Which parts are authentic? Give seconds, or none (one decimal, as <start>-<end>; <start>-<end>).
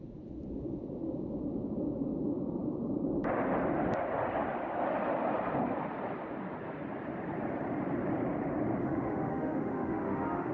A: 0.0-8.8